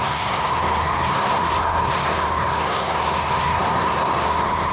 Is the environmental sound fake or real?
fake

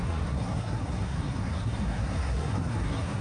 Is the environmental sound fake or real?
fake